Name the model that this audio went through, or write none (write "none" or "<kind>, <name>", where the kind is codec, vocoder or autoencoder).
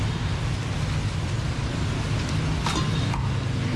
none